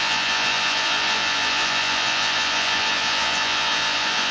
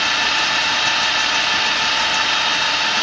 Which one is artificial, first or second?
first